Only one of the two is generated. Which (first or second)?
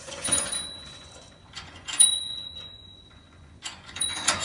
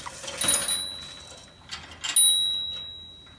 first